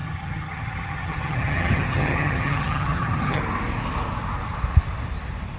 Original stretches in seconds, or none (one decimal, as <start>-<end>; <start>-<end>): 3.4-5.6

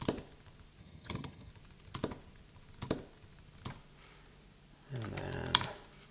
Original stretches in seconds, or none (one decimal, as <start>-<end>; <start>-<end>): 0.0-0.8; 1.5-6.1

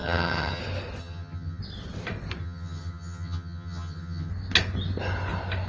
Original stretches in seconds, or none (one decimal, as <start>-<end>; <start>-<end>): 0.6-1.0; 1.6-2.4; 4.3-5.7